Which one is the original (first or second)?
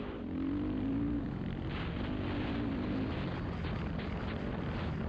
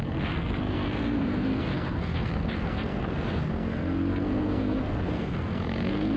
first